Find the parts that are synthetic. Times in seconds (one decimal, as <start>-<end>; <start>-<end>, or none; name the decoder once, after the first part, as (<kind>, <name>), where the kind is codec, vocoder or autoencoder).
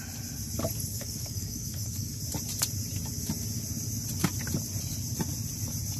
0.9-2.2 (codec, DAC)